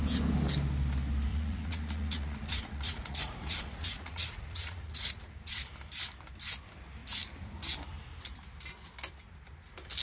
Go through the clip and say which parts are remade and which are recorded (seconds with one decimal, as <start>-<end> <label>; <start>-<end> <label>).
0.0-1.3 recorded; 1.3-5.7 remade; 5.7-10.0 recorded